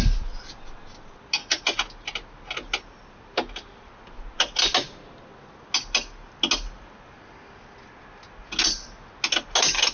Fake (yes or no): no